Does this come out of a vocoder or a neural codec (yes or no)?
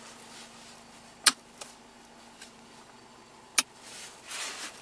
no